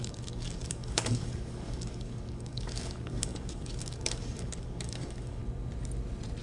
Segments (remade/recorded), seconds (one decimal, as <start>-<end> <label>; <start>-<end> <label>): 0.0-5.4 remade; 5.4-6.4 recorded